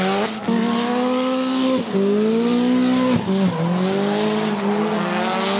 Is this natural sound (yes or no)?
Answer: yes